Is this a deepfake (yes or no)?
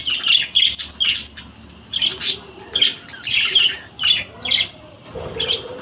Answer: no